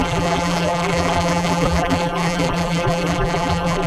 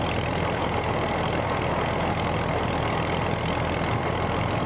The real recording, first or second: second